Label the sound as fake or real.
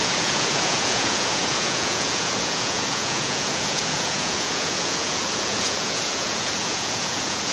fake